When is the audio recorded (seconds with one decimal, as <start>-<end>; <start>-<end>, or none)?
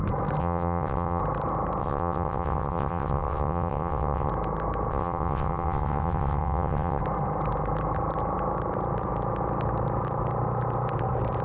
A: 0.0-0.4; 1.2-1.8; 4.3-4.9; 7.0-11.4